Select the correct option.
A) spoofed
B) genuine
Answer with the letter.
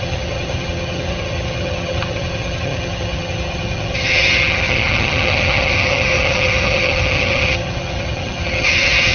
A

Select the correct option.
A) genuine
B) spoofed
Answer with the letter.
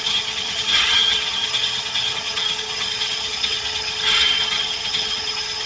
B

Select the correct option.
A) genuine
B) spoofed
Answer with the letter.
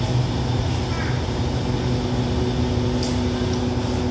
A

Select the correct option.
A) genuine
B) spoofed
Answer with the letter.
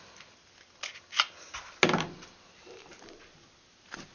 A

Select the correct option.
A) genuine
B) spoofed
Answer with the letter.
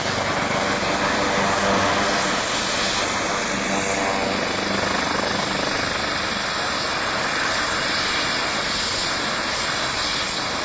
A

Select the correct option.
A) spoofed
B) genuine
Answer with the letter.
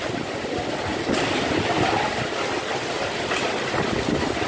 B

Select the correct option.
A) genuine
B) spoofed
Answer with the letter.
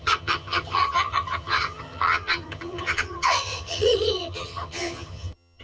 B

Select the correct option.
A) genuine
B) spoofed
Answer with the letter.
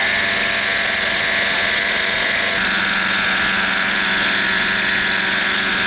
A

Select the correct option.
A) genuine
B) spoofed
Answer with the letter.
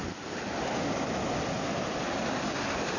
A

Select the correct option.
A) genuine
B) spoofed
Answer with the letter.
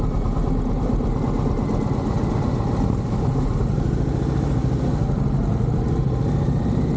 A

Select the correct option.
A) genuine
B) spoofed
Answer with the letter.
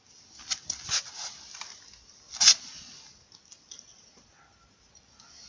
A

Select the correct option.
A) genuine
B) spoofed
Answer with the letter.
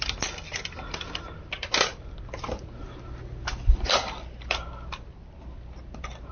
A